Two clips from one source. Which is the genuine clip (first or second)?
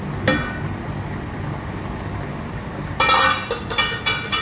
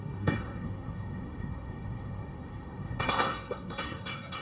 first